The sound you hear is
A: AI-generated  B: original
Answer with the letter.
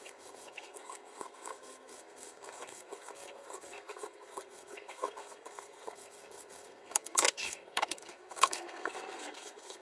A